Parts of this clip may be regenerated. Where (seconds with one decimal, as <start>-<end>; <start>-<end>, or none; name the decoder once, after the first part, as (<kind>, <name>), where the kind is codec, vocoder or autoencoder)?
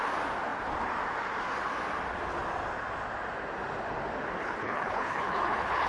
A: 4.4-5.9 (codec, HILCodec)